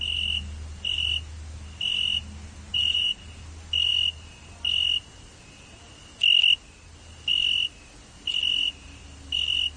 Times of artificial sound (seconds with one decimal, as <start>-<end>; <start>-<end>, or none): 2.7-3.4